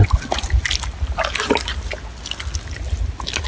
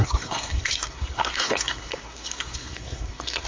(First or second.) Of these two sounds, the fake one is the second